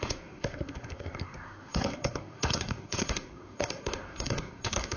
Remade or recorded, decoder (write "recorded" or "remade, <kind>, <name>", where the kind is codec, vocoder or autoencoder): remade, codec, SNAC